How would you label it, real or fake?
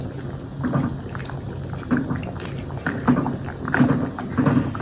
real